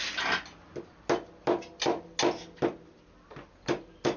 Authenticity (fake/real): real